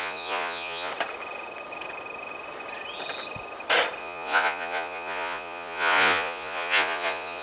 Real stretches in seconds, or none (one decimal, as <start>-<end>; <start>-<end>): 0.9-4.0